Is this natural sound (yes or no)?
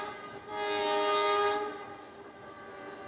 yes